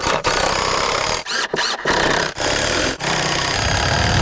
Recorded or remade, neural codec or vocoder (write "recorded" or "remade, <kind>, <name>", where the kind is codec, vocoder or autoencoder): remade, vocoder, BigVGAN v2